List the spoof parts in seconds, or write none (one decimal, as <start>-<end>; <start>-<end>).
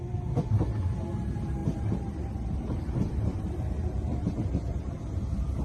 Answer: 1.6-5.0